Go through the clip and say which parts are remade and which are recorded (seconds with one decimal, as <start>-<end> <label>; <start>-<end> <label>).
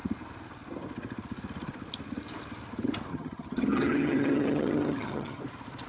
0.0-3.1 recorded; 3.1-5.4 remade; 5.4-5.9 recorded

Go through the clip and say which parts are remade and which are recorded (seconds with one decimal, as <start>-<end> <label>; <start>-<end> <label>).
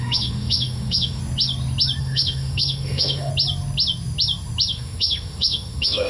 0.0-1.2 remade; 1.2-2.0 recorded; 2.0-3.3 remade; 3.3-4.7 recorded; 4.7-6.1 remade